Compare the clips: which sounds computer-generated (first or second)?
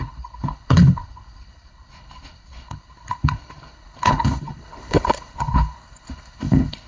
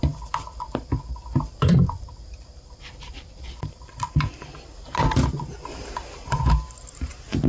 first